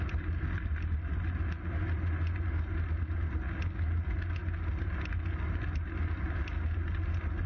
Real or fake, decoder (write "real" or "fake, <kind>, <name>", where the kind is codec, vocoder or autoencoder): real